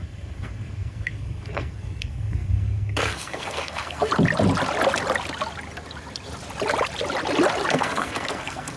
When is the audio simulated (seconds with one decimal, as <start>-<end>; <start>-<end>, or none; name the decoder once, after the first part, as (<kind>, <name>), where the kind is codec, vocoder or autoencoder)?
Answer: 0.0-4.1 (codec, SNAC); 7.7-8.8